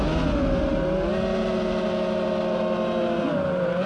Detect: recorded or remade recorded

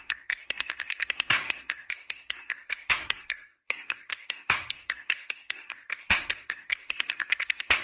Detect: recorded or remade remade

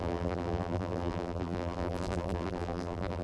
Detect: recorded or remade remade